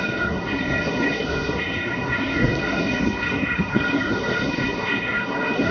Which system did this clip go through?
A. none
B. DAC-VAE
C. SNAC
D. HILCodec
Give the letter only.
C